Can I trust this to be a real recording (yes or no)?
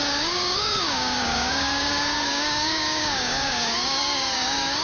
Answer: no